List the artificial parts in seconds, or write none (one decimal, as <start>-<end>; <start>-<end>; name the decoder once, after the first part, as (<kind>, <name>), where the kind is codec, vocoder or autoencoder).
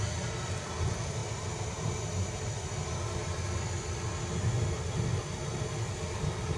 none